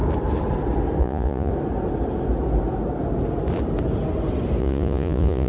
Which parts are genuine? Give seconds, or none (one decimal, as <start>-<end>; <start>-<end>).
0.0-1.0; 1.5-4.6